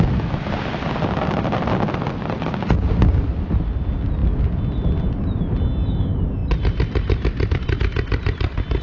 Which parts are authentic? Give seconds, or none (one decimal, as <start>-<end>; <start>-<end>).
0.0-6.4; 7.8-8.8